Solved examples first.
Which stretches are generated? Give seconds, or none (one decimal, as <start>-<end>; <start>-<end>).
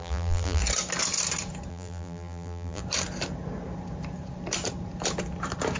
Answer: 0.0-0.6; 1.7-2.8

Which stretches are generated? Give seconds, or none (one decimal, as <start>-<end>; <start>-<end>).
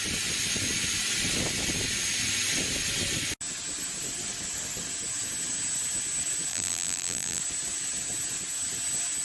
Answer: 6.5-7.4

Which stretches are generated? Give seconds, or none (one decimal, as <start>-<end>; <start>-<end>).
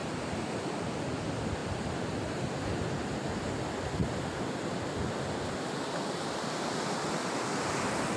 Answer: 0.0-0.9; 1.6-2.8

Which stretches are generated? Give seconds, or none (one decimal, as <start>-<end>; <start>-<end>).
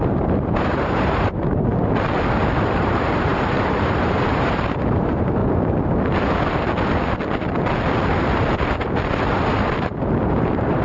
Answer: 0.0-1.7; 2.6-5.4; 10.3-10.8